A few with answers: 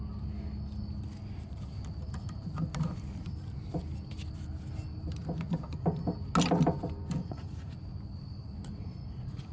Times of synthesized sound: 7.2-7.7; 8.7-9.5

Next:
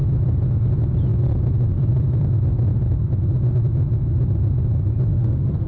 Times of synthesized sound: 5.1-5.7

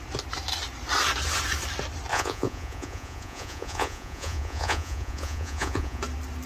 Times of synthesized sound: 2.1-6.0

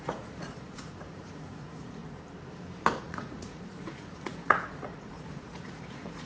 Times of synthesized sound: 0.0-2.0; 3.0-6.3

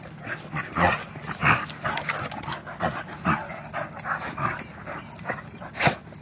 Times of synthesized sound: none

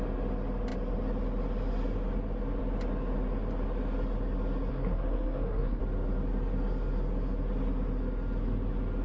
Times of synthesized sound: 4.7-5.8

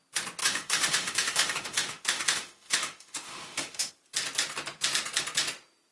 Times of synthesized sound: 0.4-3.9